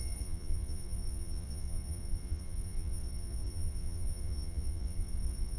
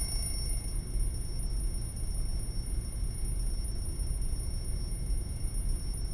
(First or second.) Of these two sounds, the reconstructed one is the first